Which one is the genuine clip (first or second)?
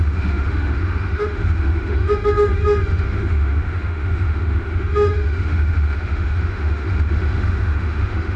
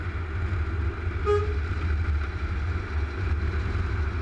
second